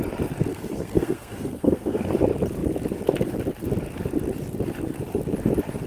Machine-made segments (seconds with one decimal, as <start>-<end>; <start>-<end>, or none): 0.5-2.1